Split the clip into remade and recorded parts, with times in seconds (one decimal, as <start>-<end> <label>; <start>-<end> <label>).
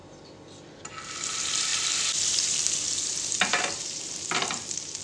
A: 0.0-0.9 recorded; 0.9-1.7 remade; 1.7-2.3 recorded; 2.3-5.0 remade